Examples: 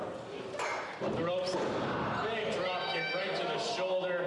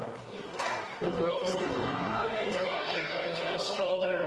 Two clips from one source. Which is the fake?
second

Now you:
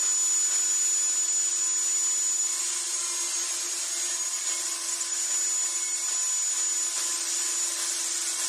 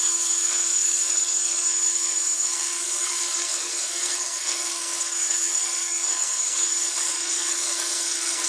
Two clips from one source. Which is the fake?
second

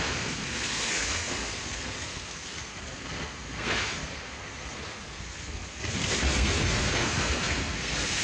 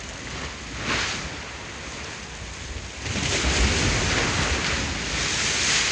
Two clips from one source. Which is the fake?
first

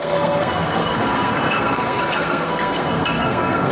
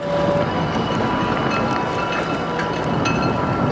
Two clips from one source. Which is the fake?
first